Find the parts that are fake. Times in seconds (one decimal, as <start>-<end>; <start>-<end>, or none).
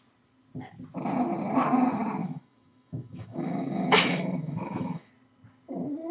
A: 2.2-5.1